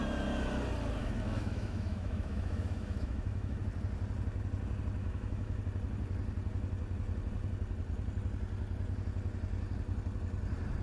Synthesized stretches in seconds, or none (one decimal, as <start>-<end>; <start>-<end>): 1.0-3.6; 5.0-5.6

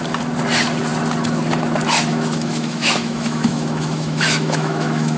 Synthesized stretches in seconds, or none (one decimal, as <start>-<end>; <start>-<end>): 2.1-5.2

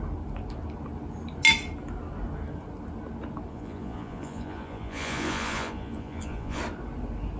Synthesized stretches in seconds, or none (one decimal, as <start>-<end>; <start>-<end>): 3.5-6.6

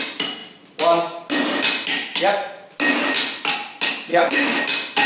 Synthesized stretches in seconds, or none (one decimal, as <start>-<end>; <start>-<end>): 4.1-4.6

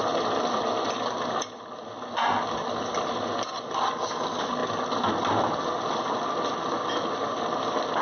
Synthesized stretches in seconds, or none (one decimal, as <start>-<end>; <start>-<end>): none

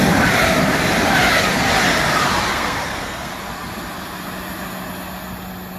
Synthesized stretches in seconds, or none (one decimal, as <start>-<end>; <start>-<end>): 2.5-3.3

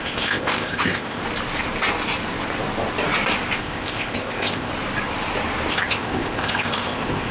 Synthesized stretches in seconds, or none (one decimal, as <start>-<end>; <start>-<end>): 0.0-1.2; 3.6-4.7; 5.7-7.3